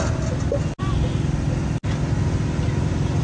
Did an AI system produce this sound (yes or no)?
no